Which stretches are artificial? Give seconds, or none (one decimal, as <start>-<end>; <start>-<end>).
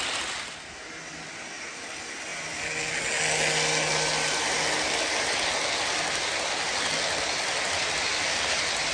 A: none